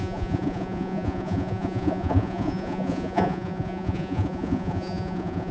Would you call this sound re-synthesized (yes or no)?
yes